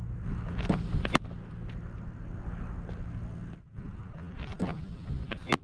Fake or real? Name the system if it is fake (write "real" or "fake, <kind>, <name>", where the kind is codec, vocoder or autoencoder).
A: real